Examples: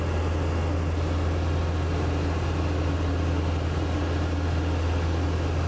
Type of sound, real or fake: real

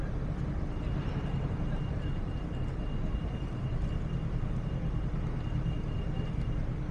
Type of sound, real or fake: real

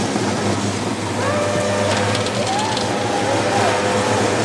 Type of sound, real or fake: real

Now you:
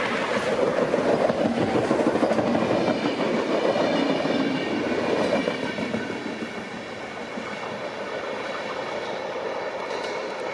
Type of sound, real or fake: real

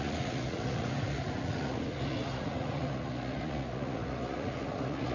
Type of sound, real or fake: fake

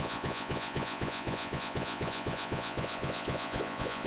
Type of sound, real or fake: fake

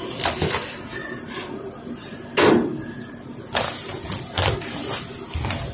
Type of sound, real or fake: real